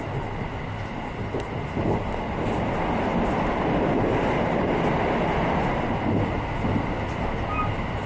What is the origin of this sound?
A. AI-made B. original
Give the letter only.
B